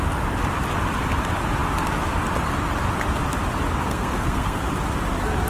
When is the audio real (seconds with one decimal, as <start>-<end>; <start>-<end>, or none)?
0.0-3.8; 4.6-5.5